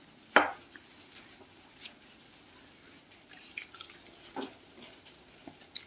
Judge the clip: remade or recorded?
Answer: recorded